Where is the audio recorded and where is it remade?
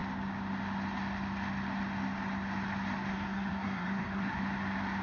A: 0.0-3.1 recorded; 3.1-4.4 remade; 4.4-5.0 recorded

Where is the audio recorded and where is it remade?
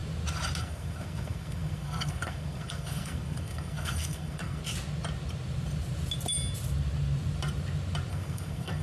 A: 0.0-0.6 recorded; 0.6-4.6 remade; 4.6-8.1 recorded; 8.1-8.8 remade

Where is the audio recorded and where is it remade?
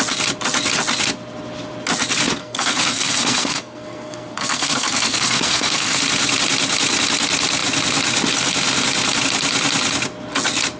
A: 0.0-2.4 recorded; 2.4-6.0 remade; 6.0-10.8 recorded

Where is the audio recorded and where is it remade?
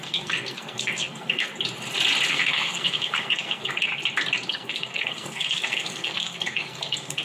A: 0.0-1.5 remade; 1.5-2.3 recorded; 2.3-3.9 remade; 3.9-4.5 recorded; 4.5-7.2 remade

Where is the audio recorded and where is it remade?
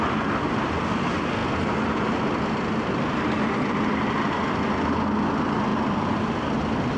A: 0.0-7.0 recorded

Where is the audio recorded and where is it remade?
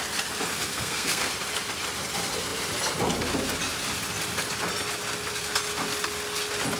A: 0.0-0.7 recorded; 0.7-1.3 remade; 1.3-6.8 recorded